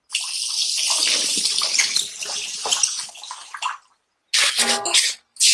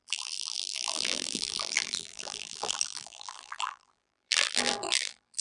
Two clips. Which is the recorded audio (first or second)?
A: first